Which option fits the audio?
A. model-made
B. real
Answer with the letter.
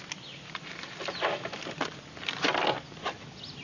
B